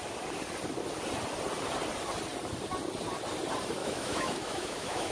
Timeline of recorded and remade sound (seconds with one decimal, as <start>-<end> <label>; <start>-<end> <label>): 0.0-3.8 recorded; 3.8-5.1 remade